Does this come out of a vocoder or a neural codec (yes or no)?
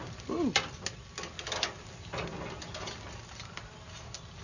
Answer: no